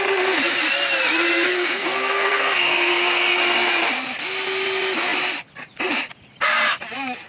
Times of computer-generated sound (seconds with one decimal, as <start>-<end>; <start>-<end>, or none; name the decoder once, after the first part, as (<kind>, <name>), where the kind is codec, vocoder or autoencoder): 1.5-3.4 (codec, SNAC)